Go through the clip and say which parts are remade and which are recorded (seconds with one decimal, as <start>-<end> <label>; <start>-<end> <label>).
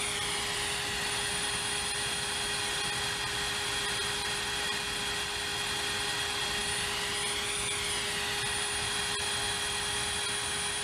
0.0-10.8 recorded